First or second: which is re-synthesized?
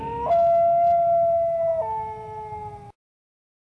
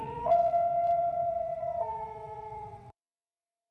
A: second